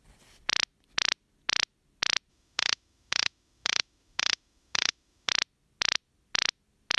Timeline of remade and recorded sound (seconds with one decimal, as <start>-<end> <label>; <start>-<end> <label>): 0.0-2.3 recorded; 2.3-5.3 remade; 5.3-7.0 recorded